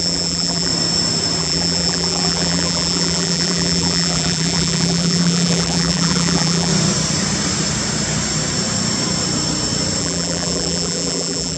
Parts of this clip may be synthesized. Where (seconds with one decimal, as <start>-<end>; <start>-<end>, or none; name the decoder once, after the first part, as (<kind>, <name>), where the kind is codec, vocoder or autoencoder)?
0.0-0.7 (vocoder, BigVGAN v2); 1.4-6.7; 10.0-11.6